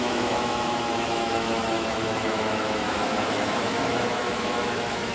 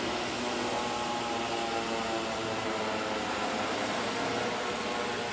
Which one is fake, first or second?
first